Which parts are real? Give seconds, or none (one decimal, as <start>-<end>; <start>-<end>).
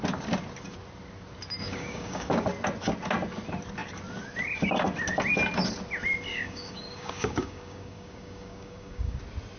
0.0-1.6; 2.3-6.3; 9.2-9.6